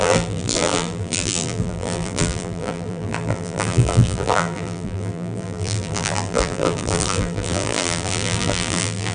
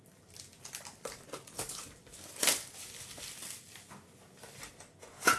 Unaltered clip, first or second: second